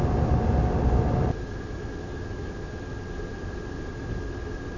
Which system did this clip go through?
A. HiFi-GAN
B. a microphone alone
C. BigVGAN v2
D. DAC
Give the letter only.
B